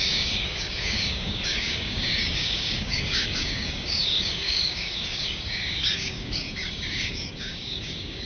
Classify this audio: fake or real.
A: fake